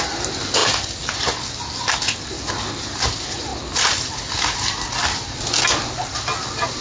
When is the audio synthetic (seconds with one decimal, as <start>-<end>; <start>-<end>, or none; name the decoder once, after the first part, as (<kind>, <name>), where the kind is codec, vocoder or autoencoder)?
none